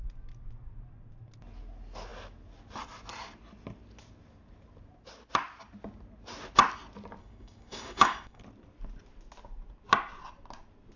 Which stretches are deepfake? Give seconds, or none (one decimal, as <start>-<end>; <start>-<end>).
7.2-8.4